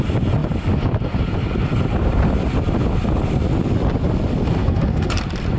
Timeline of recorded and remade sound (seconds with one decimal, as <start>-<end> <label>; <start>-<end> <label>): 0.0-4.6 recorded; 4.6-5.1 remade; 5.1-5.6 recorded